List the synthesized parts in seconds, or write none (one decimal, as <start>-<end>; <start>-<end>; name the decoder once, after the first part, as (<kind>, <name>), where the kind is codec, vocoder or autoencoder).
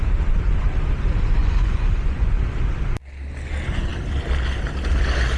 1.4-2.3 (vocoder, Vocos)